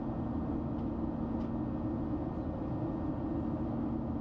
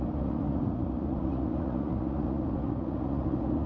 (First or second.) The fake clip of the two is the second